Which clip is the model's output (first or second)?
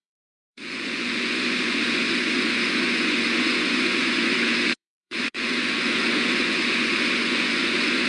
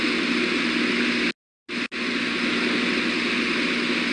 first